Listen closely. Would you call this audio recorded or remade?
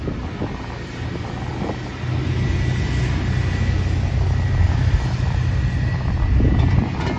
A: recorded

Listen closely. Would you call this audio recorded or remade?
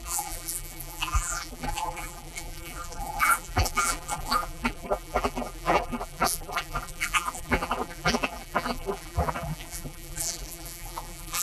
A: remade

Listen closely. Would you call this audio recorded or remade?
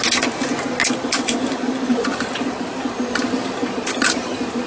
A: recorded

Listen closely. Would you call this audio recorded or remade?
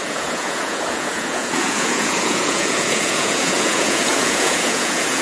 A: remade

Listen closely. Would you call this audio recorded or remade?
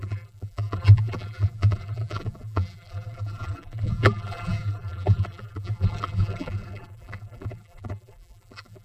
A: remade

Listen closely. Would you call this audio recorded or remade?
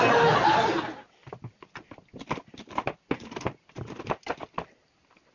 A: recorded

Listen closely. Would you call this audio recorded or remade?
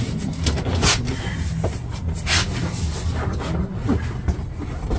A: recorded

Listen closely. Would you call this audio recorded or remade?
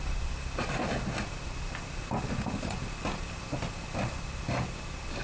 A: recorded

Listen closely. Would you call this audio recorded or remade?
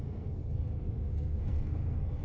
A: remade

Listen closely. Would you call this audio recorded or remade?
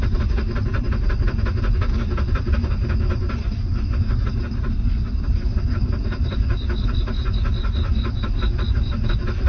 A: recorded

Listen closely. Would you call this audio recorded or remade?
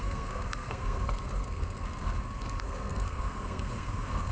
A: remade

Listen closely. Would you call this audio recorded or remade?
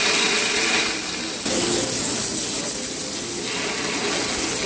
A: recorded